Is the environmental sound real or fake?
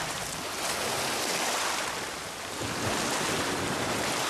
real